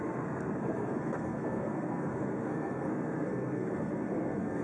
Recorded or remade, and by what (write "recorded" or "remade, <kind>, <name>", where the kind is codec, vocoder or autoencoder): remade, codec, SNAC